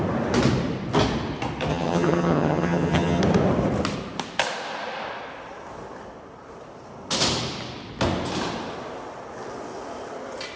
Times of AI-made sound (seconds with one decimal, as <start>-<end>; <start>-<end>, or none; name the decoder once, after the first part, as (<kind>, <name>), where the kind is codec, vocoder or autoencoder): 1.7-3.2 (vocoder, HiFi-GAN)